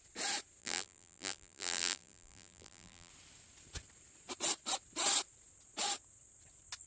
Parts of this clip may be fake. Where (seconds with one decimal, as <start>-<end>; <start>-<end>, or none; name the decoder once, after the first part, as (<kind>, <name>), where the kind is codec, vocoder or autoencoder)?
0.6-3.1 (vocoder, BigVGAN v2)